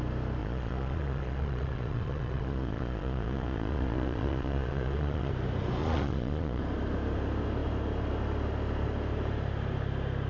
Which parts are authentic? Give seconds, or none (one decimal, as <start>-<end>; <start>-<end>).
0.0-0.4; 5.3-5.8; 6.6-10.3